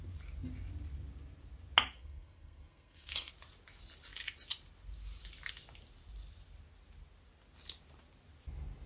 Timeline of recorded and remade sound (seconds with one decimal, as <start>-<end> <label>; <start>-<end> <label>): 0.0-2.0 recorded; 2.0-3.3 remade; 3.3-8.9 recorded